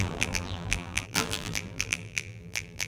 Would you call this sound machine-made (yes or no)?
yes